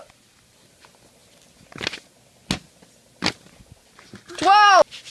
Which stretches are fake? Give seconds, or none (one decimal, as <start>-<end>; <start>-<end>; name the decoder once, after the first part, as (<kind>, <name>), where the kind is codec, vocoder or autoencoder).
none